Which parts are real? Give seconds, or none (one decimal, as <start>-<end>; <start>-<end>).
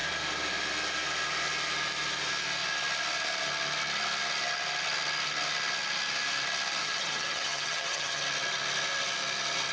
0.0-6.8; 8.2-9.7